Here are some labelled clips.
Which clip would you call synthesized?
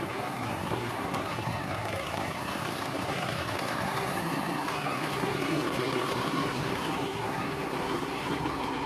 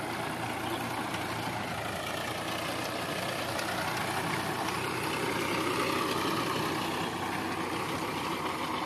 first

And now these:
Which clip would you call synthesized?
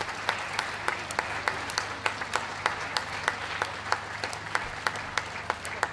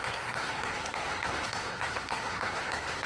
second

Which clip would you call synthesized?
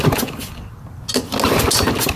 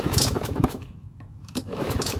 second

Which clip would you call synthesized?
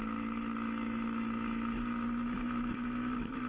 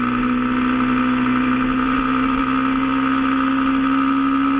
first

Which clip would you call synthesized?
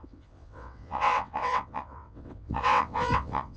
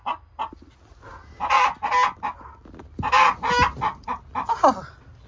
first